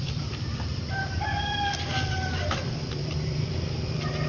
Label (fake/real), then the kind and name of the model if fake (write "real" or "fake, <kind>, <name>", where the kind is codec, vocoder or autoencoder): fake, vocoder, BigVGAN v2